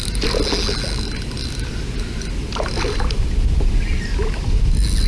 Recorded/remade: recorded